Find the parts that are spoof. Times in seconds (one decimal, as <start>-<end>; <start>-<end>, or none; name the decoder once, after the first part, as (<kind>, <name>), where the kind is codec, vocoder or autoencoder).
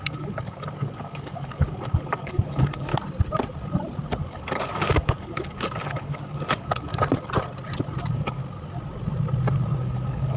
0.0-2.9 (codec, DAC); 4.2-6.9; 8.0-8.4; 9.8-10.4